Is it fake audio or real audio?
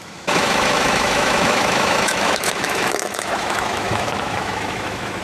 fake